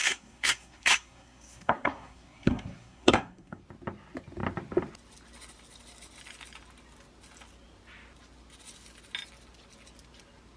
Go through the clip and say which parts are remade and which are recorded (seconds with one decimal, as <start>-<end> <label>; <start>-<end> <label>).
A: 0.0-3.6 remade; 3.6-10.6 recorded